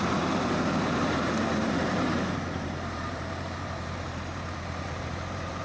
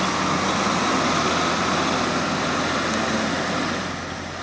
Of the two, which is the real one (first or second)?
second